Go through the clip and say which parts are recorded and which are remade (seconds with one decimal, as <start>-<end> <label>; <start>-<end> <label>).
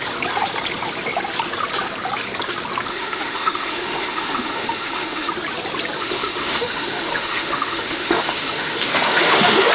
0.0-2.9 recorded; 2.9-5.3 remade; 5.3-6.0 recorded; 6.0-9.7 remade